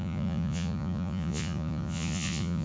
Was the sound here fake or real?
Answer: fake